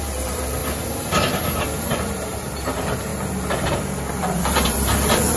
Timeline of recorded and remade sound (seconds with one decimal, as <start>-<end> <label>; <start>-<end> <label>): 0.0-0.6 remade; 0.6-1.8 recorded; 1.8-5.4 remade